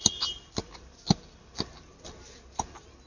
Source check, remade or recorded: recorded